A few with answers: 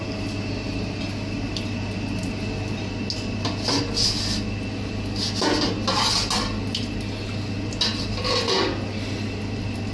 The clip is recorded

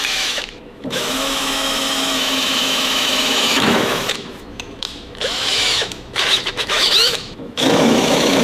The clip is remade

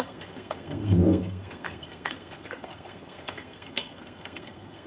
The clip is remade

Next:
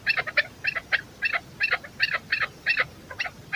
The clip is recorded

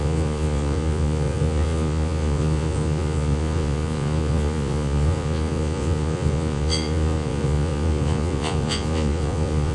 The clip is remade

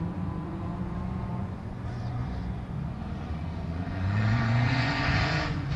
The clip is remade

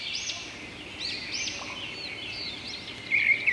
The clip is recorded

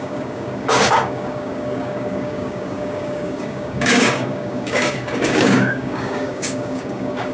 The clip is remade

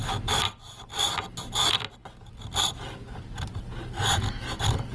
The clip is recorded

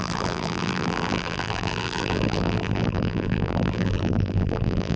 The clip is remade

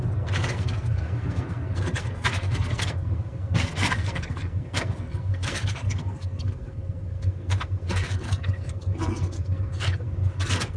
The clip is remade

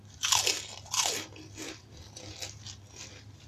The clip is recorded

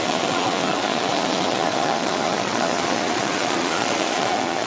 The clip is remade